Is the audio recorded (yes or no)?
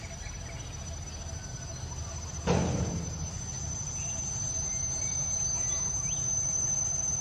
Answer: yes